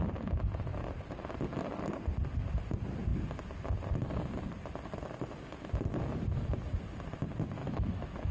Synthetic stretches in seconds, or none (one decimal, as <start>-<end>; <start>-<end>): 7.6-8.3